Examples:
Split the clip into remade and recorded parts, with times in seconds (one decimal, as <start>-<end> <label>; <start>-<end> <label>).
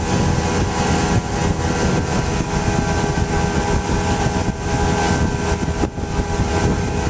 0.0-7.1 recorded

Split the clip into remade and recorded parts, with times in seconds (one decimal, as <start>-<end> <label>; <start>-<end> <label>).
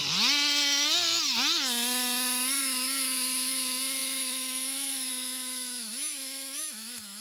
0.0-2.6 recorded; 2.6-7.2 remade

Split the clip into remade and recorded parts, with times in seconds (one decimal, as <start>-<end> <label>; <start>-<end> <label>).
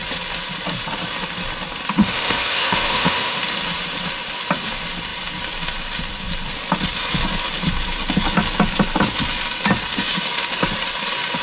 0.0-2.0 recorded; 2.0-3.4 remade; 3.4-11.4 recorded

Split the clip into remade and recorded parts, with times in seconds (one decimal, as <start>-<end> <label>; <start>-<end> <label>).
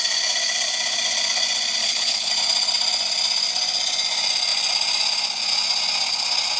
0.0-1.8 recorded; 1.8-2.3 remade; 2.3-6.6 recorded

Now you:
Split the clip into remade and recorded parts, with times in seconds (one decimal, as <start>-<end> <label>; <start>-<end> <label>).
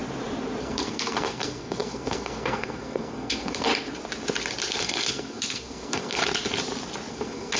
0.0-0.6 recorded; 0.6-3.7 remade; 3.7-4.7 recorded; 4.7-6.2 remade; 6.2-7.1 recorded; 7.1-7.6 remade